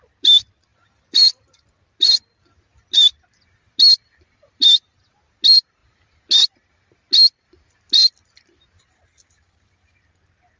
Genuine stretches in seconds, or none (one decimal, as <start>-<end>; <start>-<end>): 0.0-10.6